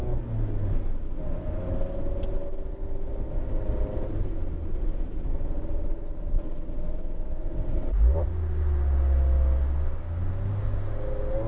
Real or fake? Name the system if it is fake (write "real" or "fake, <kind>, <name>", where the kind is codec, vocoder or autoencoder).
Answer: real